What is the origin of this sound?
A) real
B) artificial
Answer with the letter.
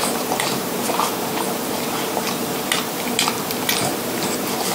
B